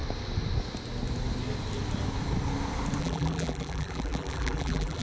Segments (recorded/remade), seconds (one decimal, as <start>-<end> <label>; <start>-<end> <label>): 0.0-3.0 recorded; 3.0-5.0 remade

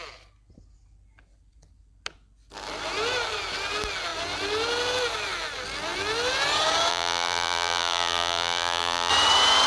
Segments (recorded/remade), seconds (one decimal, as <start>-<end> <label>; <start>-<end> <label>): 0.0-6.9 recorded; 6.9-9.1 remade; 9.1-9.7 recorded

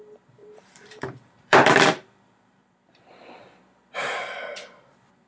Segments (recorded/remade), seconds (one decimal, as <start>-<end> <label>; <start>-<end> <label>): 0.0-0.4 recorded; 0.4-3.6 remade; 3.6-5.3 recorded

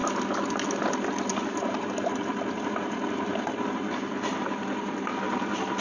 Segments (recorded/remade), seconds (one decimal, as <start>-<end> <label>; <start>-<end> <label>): 0.0-1.3 recorded; 1.3-2.3 remade; 2.3-3.3 recorded; 3.3-5.8 remade

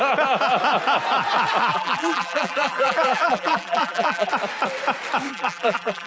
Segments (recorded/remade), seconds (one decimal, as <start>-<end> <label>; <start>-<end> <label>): 0.0-1.7 recorded; 1.7-4.3 remade; 4.3-5.3 recorded; 5.3-6.1 remade

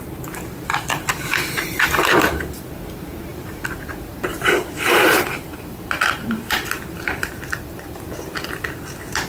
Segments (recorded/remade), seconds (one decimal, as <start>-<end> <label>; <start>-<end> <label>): 0.0-0.9 recorded; 0.9-2.4 remade; 2.4-3.3 recorded; 3.3-3.9 remade; 3.9-4.3 recorded; 4.3-7.4 remade; 7.4-9.3 recorded

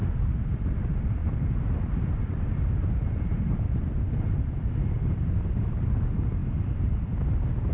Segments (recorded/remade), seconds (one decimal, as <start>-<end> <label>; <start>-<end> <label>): 0.0-1.2 recorded; 1.2-5.7 remade; 5.7-7.7 recorded